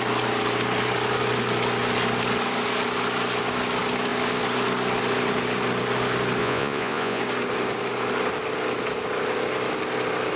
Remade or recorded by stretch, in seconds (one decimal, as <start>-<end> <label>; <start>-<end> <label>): 0.0-6.4 recorded; 6.4-7.2 remade; 7.2-10.4 recorded